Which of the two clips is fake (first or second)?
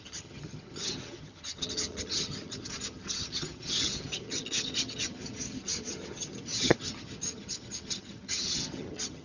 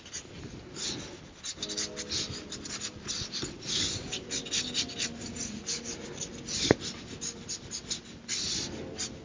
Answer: first